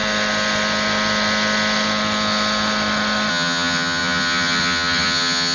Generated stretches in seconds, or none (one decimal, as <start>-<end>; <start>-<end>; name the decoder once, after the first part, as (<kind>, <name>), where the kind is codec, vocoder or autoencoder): 3.3-5.5 (vocoder, HiFi-GAN)